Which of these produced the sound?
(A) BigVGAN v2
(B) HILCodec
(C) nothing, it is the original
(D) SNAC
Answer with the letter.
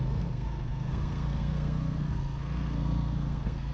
D